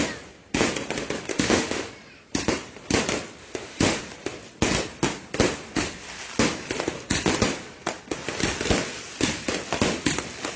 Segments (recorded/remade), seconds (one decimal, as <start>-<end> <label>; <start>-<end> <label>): 0.0-1.3 recorded; 1.3-1.9 remade; 1.9-3.4 recorded; 3.4-4.0 remade; 4.0-10.6 recorded